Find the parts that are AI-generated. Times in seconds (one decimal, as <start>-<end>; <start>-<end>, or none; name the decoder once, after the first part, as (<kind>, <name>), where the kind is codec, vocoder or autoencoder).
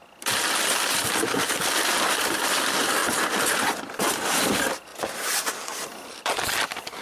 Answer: 1.5-3.0 (vocoder, BigVGAN v2); 3.6-7.0